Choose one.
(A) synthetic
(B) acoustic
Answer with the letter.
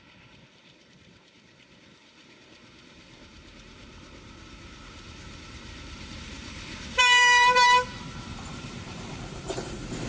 A